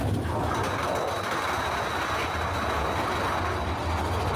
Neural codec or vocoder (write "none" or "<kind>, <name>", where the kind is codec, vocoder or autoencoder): none